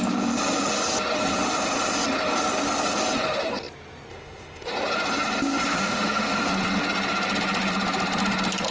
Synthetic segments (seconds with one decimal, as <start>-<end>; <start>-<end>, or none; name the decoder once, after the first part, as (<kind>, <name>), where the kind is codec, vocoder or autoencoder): 4.1-4.7 (autoencoder, DAC-VAE); 5.7-6.5